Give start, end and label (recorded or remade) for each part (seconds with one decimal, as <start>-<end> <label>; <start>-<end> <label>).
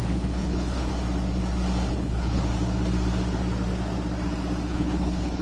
0.0-0.9 remade; 0.9-1.9 recorded; 1.9-2.5 remade; 2.5-4.7 recorded; 4.7-5.4 remade